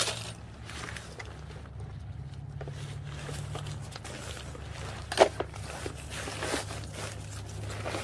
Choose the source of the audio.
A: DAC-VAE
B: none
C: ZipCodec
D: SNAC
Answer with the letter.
B